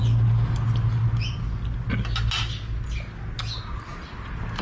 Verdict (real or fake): real